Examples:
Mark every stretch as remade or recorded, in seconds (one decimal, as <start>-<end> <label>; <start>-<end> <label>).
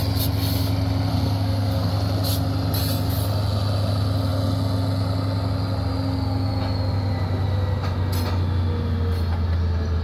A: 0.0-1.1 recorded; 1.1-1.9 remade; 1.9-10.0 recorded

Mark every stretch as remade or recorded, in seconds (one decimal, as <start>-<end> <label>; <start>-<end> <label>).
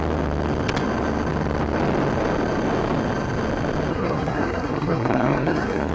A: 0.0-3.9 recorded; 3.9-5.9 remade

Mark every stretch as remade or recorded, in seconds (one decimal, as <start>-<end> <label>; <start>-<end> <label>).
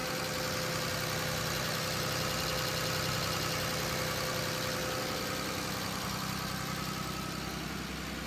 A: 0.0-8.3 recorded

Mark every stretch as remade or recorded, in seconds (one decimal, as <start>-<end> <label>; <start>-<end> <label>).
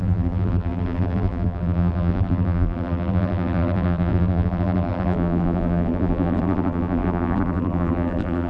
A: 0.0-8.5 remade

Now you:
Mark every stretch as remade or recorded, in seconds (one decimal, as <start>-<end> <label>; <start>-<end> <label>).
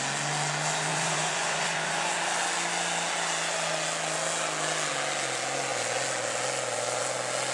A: 0.0-0.9 recorded; 0.9-2.1 remade; 2.1-7.5 recorded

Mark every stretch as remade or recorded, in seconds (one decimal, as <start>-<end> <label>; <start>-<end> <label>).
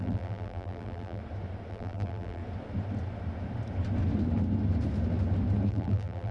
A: 0.0-1.2 remade; 1.2-1.7 recorded; 1.7-2.4 remade; 2.4-5.7 recorded; 5.7-6.3 remade